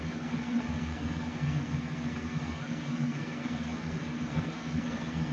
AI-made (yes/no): yes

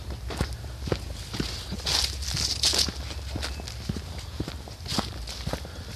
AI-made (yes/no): no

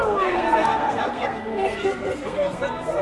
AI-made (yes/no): yes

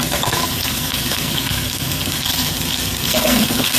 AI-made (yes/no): yes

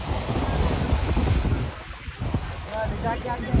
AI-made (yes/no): no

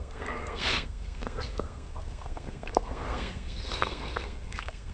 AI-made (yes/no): yes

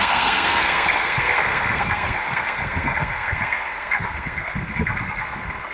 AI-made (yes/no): yes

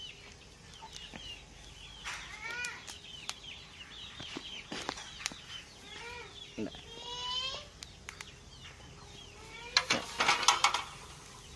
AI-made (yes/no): no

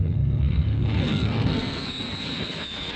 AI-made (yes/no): yes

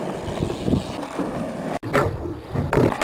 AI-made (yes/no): no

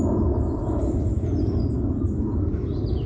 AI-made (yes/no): no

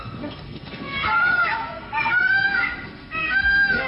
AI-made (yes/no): yes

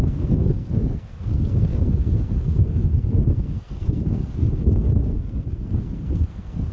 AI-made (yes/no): yes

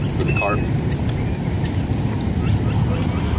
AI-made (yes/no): no